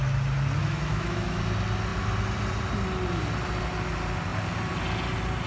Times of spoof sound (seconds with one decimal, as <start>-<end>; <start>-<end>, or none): 0.6-1.4